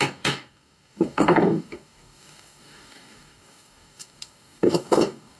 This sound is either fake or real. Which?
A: fake